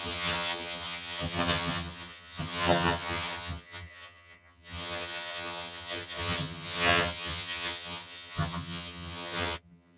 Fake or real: fake